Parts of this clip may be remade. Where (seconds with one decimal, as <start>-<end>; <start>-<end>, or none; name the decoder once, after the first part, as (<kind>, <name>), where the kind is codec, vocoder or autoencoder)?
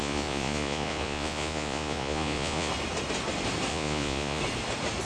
0.0-2.7 (vocoder, Vocos); 3.7-4.4